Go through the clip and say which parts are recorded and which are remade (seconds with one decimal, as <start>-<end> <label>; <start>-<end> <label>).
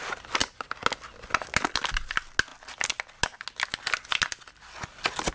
0.0-5.3 recorded